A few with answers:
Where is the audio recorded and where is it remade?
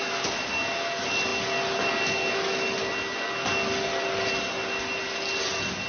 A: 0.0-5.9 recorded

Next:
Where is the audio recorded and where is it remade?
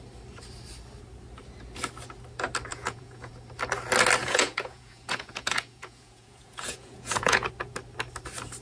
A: 0.0-2.7 recorded; 2.7-3.3 remade; 3.3-4.2 recorded; 4.2-7.5 remade; 7.5-8.6 recorded